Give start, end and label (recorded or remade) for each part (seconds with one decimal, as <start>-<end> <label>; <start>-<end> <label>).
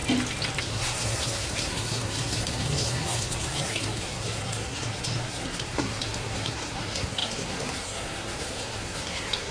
0.0-0.6 recorded; 0.6-9.5 remade